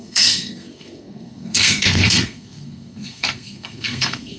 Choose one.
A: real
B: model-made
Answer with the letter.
B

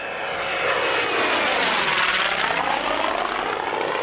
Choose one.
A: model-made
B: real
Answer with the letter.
B